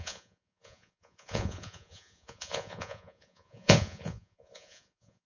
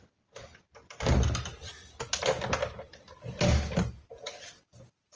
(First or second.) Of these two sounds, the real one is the second